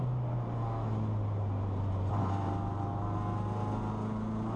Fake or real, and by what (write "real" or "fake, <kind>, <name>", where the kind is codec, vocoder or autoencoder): real